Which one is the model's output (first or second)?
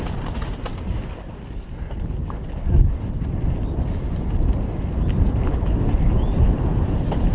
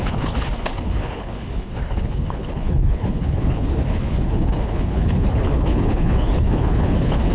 second